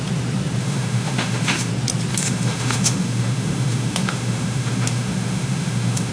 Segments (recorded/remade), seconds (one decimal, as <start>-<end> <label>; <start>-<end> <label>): 0.0-0.6 recorded; 0.6-1.7 remade; 1.7-2.1 recorded; 2.1-6.1 remade